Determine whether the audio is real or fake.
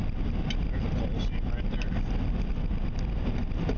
real